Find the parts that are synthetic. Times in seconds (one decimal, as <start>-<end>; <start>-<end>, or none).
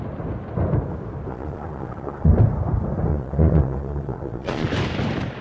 1.3-2.3; 3.1-4.7